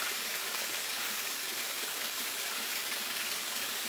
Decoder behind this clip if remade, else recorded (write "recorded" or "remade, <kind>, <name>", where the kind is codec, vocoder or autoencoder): remade, codec, DAC